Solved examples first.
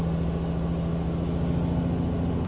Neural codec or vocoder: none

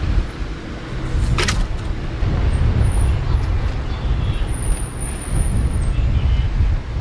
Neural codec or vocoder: none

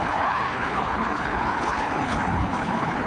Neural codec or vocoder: codec, HILCodec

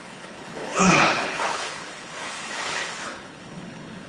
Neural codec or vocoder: codec, HILCodec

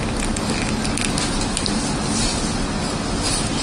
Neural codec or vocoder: none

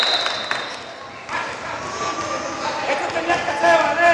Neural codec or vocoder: none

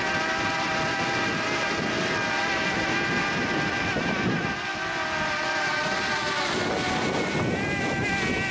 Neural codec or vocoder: none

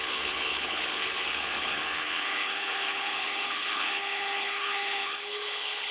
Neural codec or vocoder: codec, HILCodec